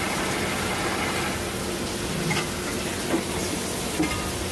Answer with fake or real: real